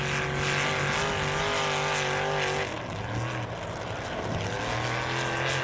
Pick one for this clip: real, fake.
real